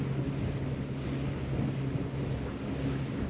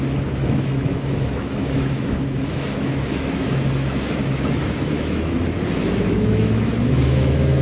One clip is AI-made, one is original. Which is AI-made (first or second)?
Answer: second